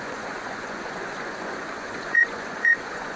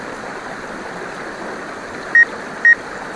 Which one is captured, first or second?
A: second